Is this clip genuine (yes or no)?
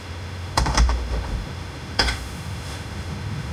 no